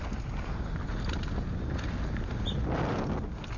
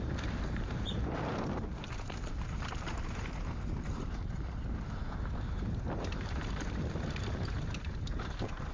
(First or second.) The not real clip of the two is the second